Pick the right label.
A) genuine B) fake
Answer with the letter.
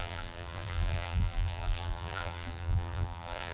B